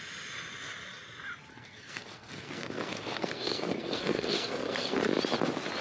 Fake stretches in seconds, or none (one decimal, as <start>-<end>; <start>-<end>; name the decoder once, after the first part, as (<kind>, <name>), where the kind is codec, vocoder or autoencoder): 1.5-5.0 (codec, SNAC)